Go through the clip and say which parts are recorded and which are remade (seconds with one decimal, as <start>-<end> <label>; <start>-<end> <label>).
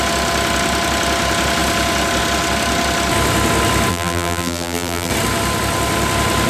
0.0-3.9 recorded; 3.9-5.1 remade; 5.1-6.5 recorded